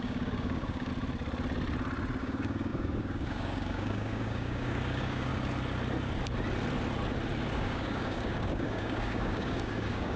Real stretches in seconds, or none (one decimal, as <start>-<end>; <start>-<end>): 0.9-2.2; 5.3-7.5